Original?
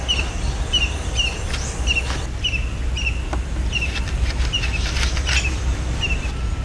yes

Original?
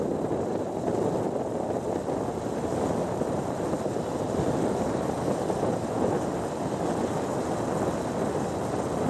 yes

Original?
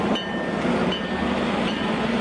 yes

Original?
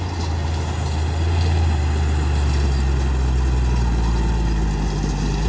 yes